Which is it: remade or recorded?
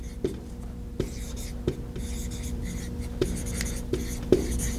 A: recorded